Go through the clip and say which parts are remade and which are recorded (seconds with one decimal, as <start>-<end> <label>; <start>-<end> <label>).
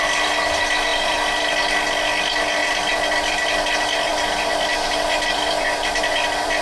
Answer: 0.0-0.9 recorded; 0.9-1.5 remade; 1.5-2.6 recorded; 2.6-3.5 remade; 3.5-4.1 recorded; 4.1-6.6 remade